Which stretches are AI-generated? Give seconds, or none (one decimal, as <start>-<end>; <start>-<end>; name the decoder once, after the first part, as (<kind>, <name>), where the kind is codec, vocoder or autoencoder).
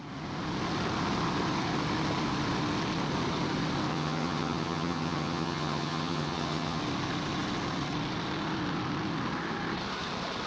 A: 3.9-6.8 (vocoder, HiFi-GAN)